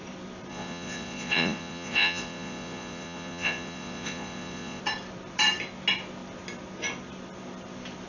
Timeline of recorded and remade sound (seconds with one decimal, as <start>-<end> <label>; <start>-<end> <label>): 0.0-0.5 recorded; 0.5-4.8 remade; 4.8-8.1 recorded